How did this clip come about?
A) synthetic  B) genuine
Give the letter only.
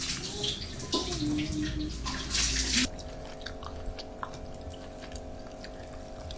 B